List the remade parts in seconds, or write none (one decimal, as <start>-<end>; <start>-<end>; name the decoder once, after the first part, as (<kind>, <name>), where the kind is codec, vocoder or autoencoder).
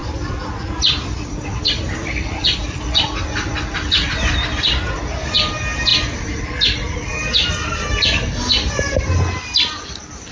none